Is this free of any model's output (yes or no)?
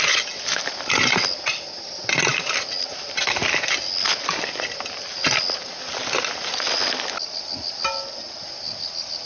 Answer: yes